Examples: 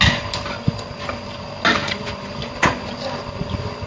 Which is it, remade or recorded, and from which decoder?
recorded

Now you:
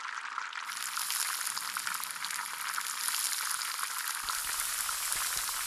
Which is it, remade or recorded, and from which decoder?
recorded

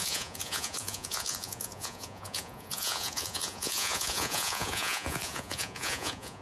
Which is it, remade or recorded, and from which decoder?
remade, vocoder, Vocos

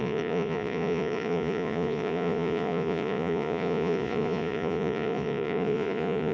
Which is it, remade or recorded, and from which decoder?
remade, vocoder, Vocos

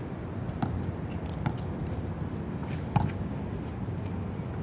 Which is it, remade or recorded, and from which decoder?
recorded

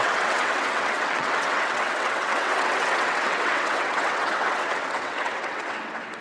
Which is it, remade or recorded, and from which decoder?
remade, vocoder, WaveNeXt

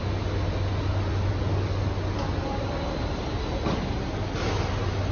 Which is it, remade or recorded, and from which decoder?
recorded